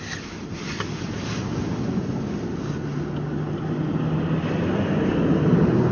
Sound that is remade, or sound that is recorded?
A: recorded